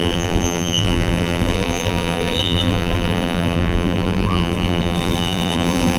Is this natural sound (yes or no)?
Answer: no